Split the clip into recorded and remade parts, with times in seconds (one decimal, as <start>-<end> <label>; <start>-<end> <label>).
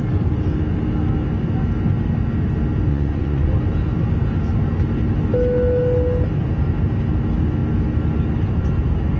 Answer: 0.0-2.9 recorded; 2.9-3.5 remade; 3.5-9.2 recorded